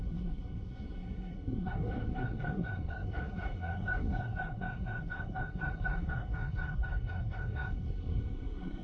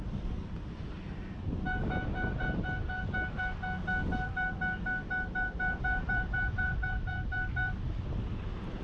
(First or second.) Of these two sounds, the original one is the second